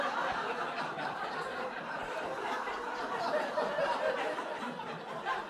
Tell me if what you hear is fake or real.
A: fake